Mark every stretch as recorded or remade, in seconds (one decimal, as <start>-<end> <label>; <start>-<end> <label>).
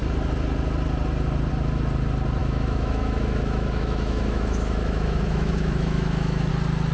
0.0-2.4 recorded; 2.4-6.5 remade; 6.5-6.9 recorded